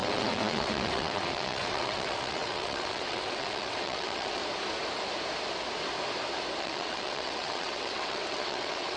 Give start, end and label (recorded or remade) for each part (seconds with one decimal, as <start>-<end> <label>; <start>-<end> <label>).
0.0-4.4 remade; 4.4-6.6 recorded; 6.6-9.0 remade